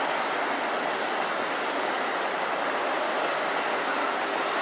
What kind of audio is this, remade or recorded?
recorded